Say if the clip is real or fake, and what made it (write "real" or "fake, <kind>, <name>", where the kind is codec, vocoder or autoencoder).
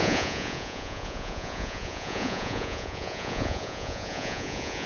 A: fake, vocoder, Vocos